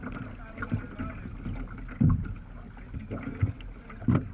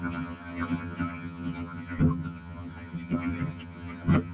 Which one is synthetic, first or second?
second